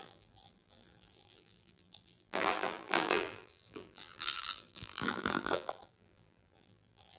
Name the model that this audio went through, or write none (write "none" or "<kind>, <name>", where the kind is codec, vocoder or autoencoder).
vocoder, BigVGAN v2